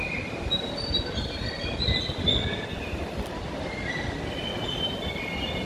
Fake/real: real